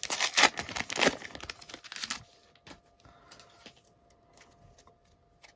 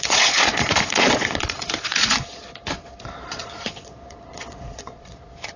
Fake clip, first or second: second